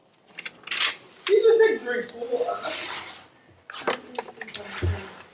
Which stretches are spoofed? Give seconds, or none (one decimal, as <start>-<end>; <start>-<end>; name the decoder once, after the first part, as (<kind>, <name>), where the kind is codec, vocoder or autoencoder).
none